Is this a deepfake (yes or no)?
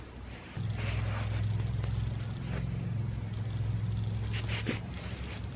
no